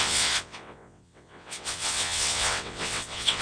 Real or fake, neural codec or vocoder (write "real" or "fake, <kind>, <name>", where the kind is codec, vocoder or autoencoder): fake, vocoder, WaveNeXt